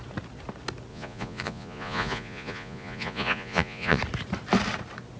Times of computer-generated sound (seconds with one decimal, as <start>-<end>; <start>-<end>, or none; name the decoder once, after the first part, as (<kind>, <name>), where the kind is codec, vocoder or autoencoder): 0.9-4.0 (vocoder, Vocos)